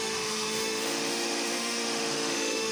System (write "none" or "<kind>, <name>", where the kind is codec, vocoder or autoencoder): autoencoder, DAC-VAE